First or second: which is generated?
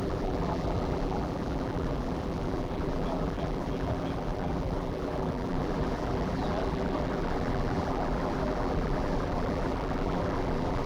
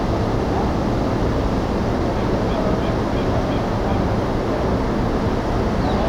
first